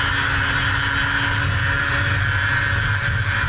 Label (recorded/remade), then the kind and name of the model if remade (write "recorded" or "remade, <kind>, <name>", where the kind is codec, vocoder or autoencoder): recorded